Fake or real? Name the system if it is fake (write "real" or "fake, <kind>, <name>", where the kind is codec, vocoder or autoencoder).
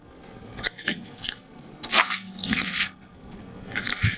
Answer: fake, codec, SNAC